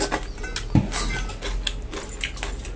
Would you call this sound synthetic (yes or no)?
no